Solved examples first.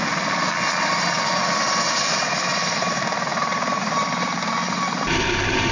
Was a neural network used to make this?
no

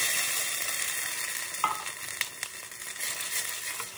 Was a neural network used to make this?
no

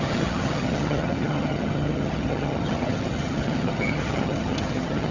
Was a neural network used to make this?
yes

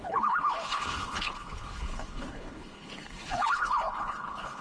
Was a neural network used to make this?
yes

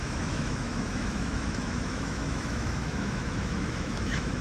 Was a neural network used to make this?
yes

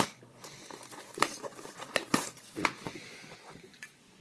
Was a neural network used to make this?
yes